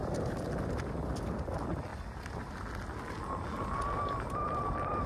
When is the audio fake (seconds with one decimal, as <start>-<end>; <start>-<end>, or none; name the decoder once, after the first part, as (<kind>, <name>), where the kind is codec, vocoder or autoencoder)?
none